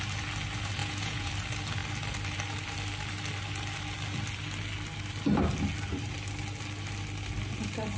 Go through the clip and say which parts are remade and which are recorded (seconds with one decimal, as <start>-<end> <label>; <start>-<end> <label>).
0.0-0.8 recorded; 0.8-1.3 remade; 1.3-8.0 recorded

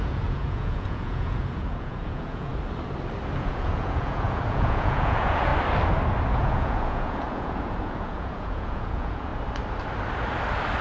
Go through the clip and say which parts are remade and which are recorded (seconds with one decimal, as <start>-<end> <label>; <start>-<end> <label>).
0.0-2.5 remade; 2.5-3.4 recorded; 3.4-5.5 remade; 5.5-6.3 recorded; 6.3-9.3 remade; 9.3-10.8 recorded

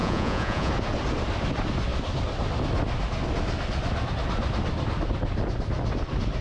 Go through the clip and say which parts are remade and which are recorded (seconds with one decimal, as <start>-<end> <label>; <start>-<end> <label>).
0.0-0.7 remade; 0.7-6.4 recorded

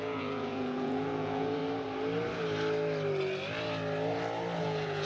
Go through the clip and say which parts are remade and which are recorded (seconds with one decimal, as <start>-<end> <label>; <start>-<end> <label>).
0.0-1.6 remade; 1.6-4.6 recorded; 4.6-5.0 remade

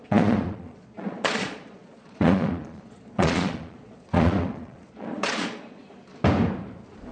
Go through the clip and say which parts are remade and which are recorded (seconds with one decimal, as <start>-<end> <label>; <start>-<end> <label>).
0.0-5.8 remade; 5.8-7.1 recorded

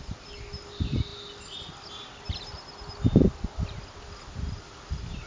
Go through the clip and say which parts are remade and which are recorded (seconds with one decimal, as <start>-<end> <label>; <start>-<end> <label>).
0.0-5.3 recorded